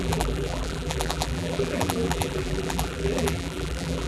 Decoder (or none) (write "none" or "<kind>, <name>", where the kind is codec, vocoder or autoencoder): vocoder, BigVGAN v2